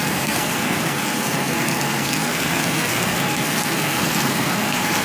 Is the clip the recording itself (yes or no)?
no